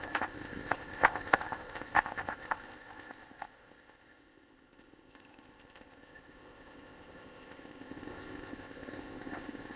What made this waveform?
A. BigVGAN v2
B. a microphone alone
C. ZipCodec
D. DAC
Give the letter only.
C